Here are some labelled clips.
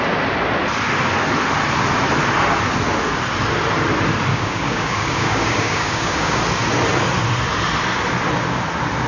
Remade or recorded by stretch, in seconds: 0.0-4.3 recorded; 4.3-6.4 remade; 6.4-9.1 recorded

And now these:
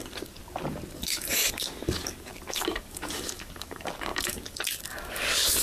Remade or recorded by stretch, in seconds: 0.0-0.4 remade; 0.4-1.0 recorded; 1.0-5.6 remade

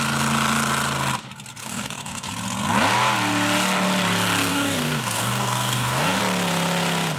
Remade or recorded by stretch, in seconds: 0.0-1.6 recorded; 1.6-2.3 remade; 2.3-4.5 recorded; 4.5-6.2 remade; 6.2-7.2 recorded

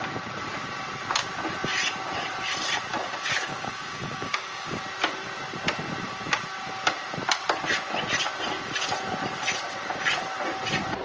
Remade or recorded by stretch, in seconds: 0.0-3.0 recorded; 3.0-4.8 remade; 4.8-11.0 recorded

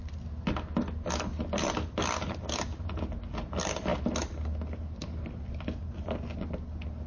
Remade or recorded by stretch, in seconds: 0.0-7.1 recorded

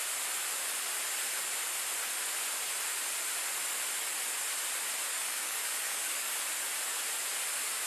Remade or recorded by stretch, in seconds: 0.0-5.1 recorded; 5.1-6.4 remade; 6.4-7.9 recorded

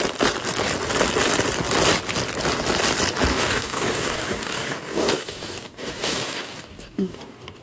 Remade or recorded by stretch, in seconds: 0.0-3.3 recorded; 3.3-7.6 remade

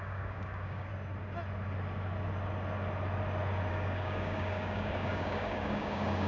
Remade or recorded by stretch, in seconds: 0.0-0.9 remade; 0.9-3.7 recorded; 3.7-6.3 remade